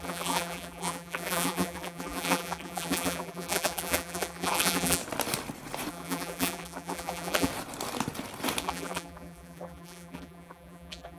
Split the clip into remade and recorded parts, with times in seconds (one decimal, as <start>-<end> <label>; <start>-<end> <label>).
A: 0.0-5.0 remade; 5.0-5.9 recorded; 5.9-7.5 remade; 7.5-8.6 recorded; 8.6-11.2 remade